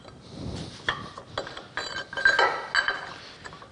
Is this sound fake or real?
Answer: real